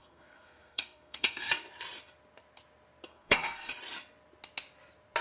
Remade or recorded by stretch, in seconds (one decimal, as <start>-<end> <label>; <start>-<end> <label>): 0.0-1.5 remade; 1.5-3.1 recorded; 3.1-3.7 remade; 3.7-5.2 recorded